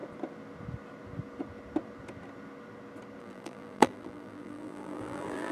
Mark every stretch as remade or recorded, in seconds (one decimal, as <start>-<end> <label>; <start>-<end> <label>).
0.0-3.2 recorded; 3.2-5.5 remade